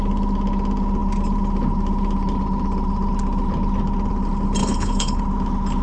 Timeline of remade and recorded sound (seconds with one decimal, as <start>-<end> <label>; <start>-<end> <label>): 0.0-4.6 recorded; 4.6-5.2 remade; 5.2-5.8 recorded